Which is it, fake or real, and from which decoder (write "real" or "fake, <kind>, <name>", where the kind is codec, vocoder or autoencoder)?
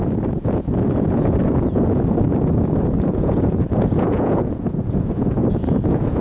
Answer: fake, vocoder, Vocos